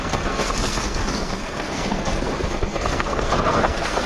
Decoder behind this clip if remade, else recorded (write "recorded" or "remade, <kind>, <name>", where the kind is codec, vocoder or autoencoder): remade, codec, SNAC